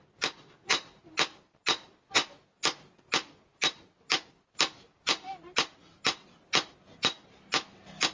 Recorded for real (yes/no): yes